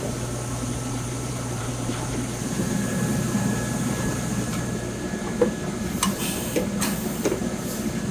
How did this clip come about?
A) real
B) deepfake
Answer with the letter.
B